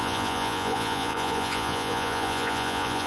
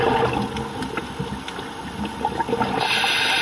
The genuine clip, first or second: second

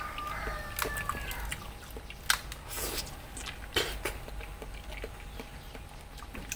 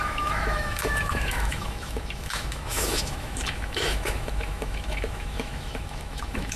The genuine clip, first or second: first